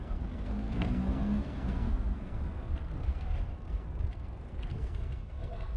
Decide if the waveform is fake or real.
fake